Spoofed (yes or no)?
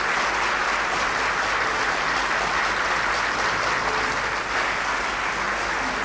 no